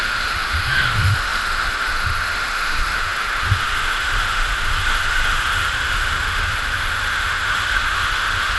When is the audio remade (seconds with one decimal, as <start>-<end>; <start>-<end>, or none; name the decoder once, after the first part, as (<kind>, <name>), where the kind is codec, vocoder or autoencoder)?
0.0-8.6 (autoencoder, DAC-VAE)